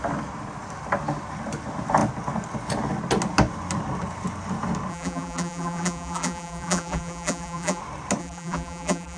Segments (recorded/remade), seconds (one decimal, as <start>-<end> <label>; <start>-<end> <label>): 0.0-4.9 recorded; 4.9-7.8 remade; 7.8-8.2 recorded; 8.2-9.2 remade